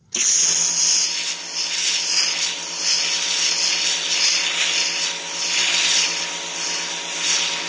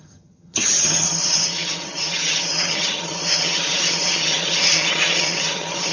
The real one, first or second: first